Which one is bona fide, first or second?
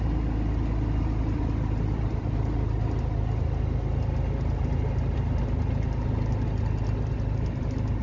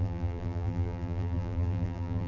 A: first